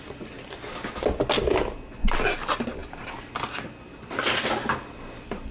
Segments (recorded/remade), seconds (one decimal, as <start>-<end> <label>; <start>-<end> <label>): 0.0-5.5 recorded